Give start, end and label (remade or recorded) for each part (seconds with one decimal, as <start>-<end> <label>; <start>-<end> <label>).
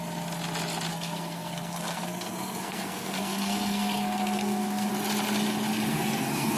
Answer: 0.0-0.9 recorded; 0.9-4.9 remade; 4.9-5.9 recorded; 5.9-6.6 remade